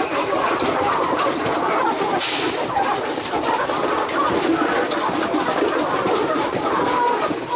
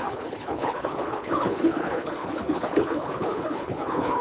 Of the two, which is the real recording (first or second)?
first